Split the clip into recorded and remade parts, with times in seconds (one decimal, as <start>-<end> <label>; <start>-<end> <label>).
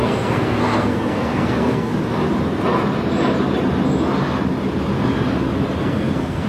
0.0-1.9 remade; 1.9-5.8 recorded; 5.8-6.5 remade